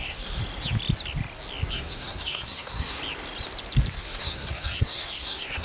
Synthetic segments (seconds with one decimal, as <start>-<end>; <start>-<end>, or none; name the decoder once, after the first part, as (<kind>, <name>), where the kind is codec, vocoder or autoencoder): 0.0-0.4 (codec, SNAC); 1.7-3.0; 3.9-5.6